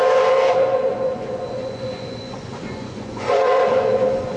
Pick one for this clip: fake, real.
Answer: fake